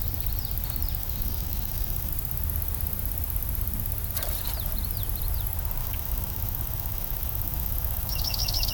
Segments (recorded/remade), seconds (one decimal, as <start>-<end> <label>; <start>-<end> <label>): 0.0-1.0 recorded; 1.0-2.1 remade; 2.1-5.8 recorded; 5.8-8.7 remade